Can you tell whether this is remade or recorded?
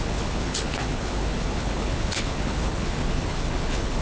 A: remade